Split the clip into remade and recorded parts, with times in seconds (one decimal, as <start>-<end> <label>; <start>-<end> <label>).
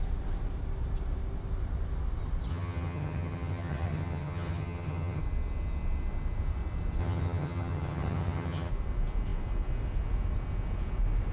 0.0-2.5 recorded; 2.5-5.2 remade; 5.2-7.0 recorded; 7.0-8.7 remade; 8.7-11.3 recorded